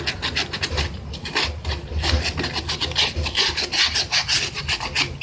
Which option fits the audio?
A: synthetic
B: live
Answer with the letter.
B